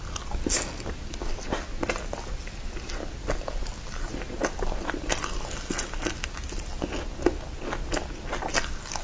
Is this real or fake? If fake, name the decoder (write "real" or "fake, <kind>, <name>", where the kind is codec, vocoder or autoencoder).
real